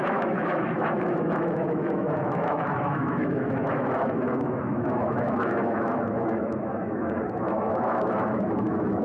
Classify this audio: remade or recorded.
remade